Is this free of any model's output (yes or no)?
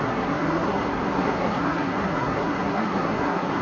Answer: no